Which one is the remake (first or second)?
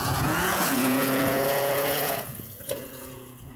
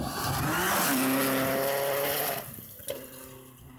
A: first